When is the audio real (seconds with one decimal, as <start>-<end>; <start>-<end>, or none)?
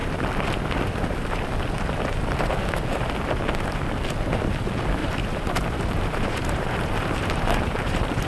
0.0-5.0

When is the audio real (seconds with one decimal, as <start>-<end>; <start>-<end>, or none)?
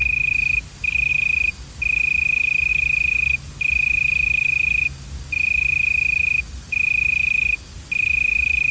0.0-2.7; 3.5-8.7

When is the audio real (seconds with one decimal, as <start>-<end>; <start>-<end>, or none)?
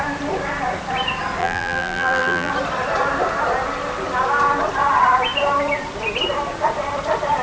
0.0-1.4; 2.5-7.4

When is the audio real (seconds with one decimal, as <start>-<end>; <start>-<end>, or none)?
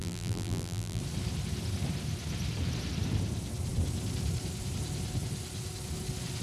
1.0-6.4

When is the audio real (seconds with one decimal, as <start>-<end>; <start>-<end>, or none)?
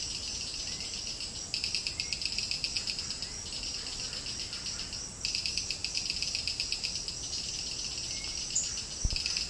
0.0-9.5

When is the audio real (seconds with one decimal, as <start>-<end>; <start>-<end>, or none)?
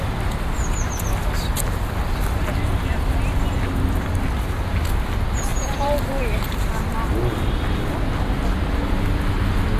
0.0-5.5; 6.2-9.8